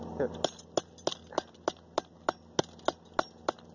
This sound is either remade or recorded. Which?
recorded